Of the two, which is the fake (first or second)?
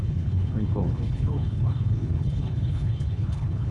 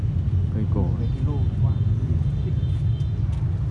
first